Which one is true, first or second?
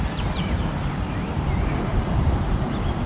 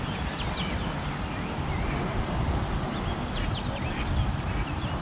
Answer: second